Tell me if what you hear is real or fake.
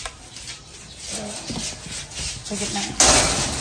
real